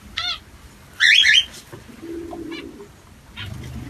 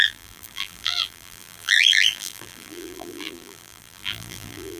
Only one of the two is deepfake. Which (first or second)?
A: second